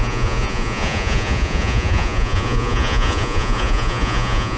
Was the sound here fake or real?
fake